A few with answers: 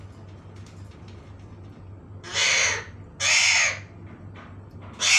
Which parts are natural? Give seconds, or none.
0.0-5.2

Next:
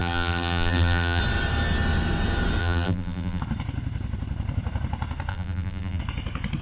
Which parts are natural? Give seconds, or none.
1.2-2.6; 3.4-5.3; 6.0-6.6

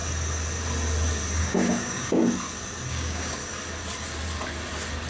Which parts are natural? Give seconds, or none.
0.0-1.4; 2.2-2.9; 3.4-5.1

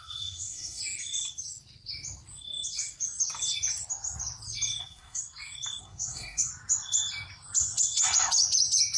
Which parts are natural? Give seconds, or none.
0.8-4.8; 5.2-5.8; 6.5-9.0

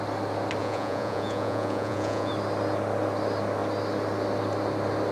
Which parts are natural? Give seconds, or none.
0.0-0.6; 2.3-5.1